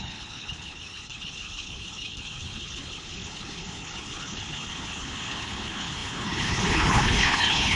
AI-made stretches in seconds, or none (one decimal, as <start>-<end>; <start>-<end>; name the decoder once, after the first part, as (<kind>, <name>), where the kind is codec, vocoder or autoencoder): 0.0-7.8 (codec, HILCodec)